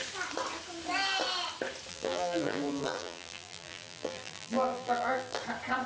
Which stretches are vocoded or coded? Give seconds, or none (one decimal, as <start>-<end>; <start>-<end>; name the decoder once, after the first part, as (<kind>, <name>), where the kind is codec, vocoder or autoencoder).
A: 1.9-5.4 (vocoder, BigVGAN v2)

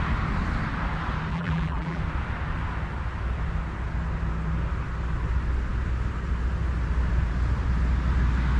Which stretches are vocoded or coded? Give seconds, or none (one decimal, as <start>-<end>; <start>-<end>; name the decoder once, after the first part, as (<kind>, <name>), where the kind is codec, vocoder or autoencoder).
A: 1.3-2.0 (vocoder, BigVGAN v2)

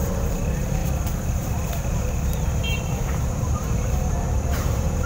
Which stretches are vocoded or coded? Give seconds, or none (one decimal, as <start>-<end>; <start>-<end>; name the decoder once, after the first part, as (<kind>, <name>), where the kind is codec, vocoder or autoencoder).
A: 0.0-0.8 (vocoder, BigVGAN v2); 1.7-5.1

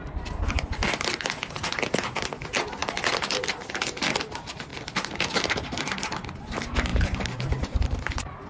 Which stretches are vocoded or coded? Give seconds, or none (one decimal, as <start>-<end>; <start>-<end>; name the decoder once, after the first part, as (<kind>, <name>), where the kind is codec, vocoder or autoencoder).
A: 6.9-7.5 (vocoder, BigVGAN v2)

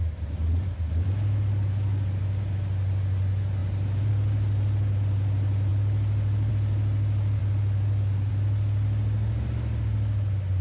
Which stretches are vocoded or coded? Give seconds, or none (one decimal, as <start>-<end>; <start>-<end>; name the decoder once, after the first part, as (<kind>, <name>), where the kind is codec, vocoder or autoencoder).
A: 3.6-4.1 (vocoder, BigVGAN v2)